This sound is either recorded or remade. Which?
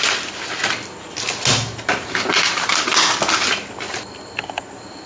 recorded